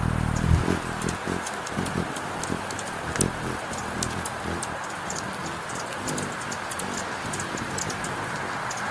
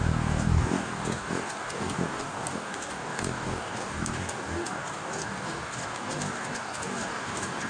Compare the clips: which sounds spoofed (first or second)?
second